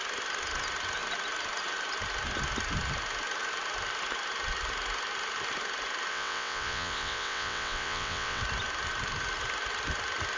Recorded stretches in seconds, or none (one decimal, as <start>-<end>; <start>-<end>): 0.0-6.1; 8.4-10.4